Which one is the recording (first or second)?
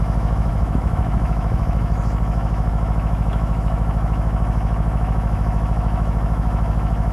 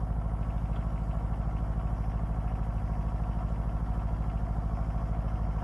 second